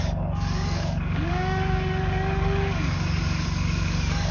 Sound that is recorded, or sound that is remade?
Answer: remade